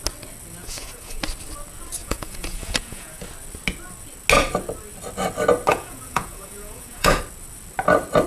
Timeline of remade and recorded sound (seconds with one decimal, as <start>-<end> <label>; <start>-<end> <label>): 0.0-0.6 recorded; 0.6-1.2 remade; 1.2-2.0 recorded; 2.0-3.2 remade; 3.2-5.7 recorded; 5.7-7.2 remade; 7.2-8.3 recorded